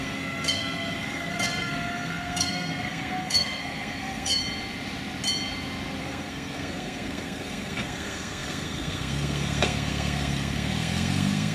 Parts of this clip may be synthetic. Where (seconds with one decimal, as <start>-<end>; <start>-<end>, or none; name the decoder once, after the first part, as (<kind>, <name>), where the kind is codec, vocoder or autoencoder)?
0.0-4.4 (codec, SNAC); 6.0-11.5